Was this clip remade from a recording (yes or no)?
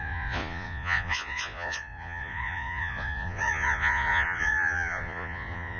yes